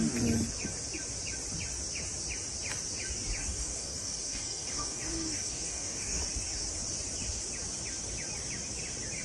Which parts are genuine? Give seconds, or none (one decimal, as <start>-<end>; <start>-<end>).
0.0-3.4; 6.2-9.2